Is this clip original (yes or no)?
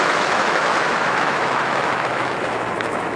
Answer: no